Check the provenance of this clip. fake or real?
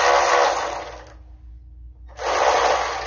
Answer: real